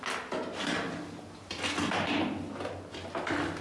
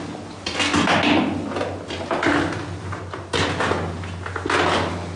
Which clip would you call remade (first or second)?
first